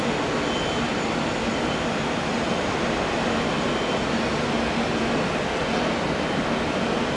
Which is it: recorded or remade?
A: recorded